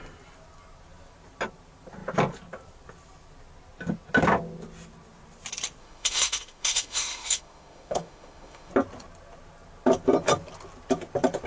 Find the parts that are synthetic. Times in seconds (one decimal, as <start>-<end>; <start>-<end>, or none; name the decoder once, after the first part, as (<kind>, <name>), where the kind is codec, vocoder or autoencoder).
5.8-8.7 (autoencoder, DAC-VAE)